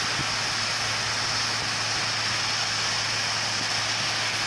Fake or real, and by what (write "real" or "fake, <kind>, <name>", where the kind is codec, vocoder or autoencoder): real